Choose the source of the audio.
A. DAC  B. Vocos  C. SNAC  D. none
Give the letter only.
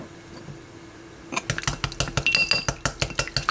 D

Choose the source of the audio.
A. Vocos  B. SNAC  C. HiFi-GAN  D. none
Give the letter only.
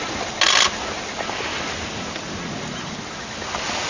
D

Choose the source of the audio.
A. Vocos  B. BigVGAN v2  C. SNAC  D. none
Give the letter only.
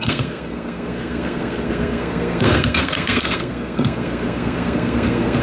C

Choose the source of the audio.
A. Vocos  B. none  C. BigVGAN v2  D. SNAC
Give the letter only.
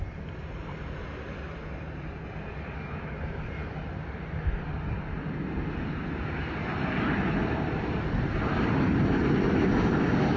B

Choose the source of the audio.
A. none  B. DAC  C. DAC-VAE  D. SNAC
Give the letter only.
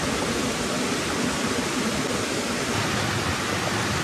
A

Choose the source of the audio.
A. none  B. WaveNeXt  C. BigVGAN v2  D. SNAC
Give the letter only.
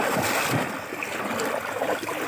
A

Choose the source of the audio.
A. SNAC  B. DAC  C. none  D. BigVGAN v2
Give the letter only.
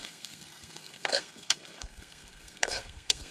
A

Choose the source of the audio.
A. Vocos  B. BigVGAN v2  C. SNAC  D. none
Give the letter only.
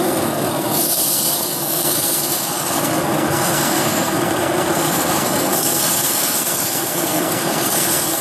C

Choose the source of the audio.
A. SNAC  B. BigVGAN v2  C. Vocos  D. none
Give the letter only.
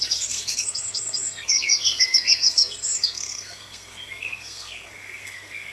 A